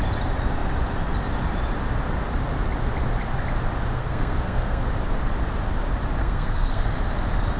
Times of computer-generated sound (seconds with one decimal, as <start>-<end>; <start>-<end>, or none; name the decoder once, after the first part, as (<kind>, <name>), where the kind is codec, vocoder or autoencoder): 3.9-4.8 (codec, SNAC); 6.2-6.9